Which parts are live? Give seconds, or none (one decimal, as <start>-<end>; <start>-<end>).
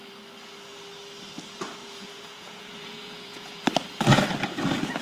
0.0-1.8; 3.6-5.0